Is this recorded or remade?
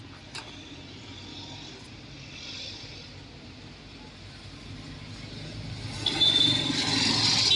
recorded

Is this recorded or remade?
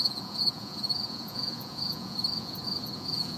remade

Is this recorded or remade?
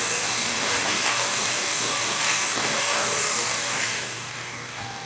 remade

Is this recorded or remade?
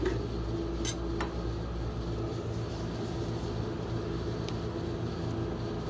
recorded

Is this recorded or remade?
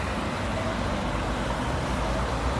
recorded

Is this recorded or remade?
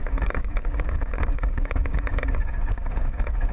remade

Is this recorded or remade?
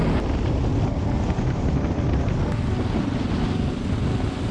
recorded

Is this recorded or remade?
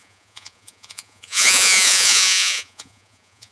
remade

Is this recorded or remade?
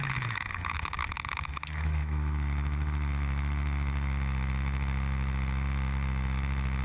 remade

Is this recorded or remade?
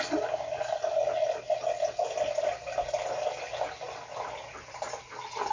recorded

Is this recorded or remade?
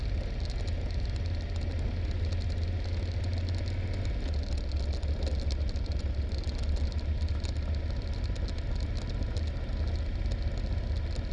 recorded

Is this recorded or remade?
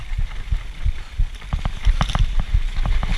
recorded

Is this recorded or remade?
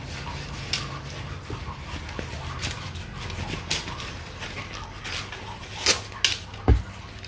recorded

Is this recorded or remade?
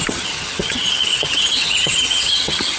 remade